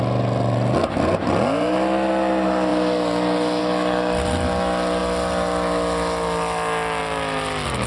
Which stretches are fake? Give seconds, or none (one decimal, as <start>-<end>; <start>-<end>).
none